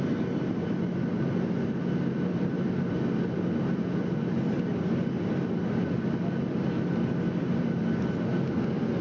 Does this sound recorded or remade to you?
recorded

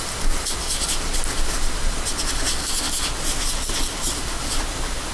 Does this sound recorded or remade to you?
recorded